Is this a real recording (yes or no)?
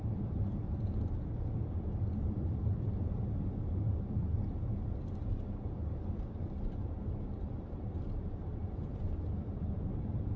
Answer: no